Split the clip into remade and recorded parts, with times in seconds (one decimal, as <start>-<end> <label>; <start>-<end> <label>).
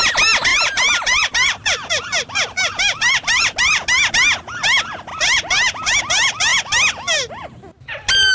0.0-0.5 recorded; 0.5-4.1 remade; 4.1-5.1 recorded; 5.1-6.0 remade; 6.0-8.3 recorded